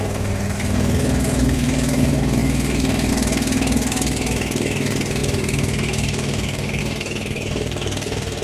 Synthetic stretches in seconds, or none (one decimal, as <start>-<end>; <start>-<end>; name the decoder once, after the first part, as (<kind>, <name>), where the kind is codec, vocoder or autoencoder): 0.0-8.4 (codec, DAC)

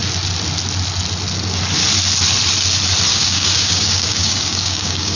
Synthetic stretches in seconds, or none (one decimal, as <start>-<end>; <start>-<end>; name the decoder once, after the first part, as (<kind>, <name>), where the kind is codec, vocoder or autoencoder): 3.1-5.2 (codec, DAC)